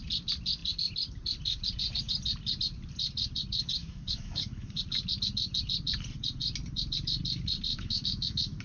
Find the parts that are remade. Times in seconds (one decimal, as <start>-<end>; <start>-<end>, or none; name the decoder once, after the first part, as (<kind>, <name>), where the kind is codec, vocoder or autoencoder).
3.8-4.8 (autoencoder, DAC-VAE); 7.7-8.6